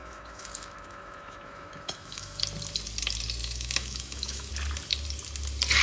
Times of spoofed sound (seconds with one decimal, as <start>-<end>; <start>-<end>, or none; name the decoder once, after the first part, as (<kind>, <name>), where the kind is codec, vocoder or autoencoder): 0.0-2.4 (autoencoder, DAC-VAE); 3.4-4.5